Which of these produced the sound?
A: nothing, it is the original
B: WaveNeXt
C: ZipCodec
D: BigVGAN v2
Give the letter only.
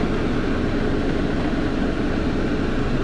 A